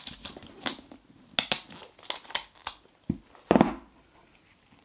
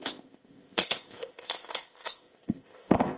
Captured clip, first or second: first